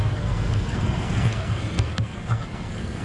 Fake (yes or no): yes